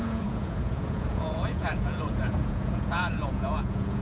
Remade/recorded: remade